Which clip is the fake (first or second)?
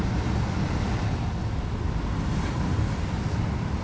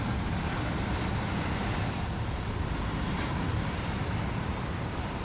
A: second